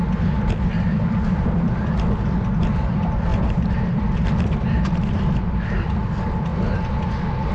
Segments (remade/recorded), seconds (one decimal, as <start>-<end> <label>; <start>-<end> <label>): 0.0-3.3 recorded; 3.3-4.0 remade; 4.0-7.5 recorded